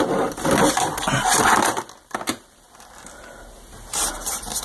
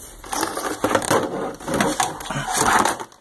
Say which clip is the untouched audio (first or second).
second